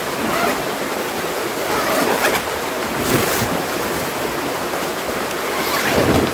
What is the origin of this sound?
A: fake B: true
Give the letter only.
B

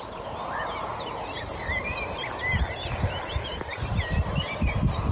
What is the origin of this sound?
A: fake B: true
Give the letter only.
B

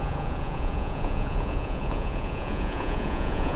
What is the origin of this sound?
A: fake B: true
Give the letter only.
A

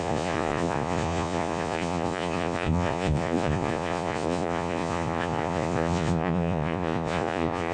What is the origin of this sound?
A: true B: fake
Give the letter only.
B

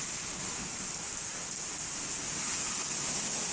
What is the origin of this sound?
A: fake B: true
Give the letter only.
B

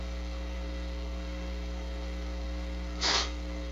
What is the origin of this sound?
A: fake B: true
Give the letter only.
A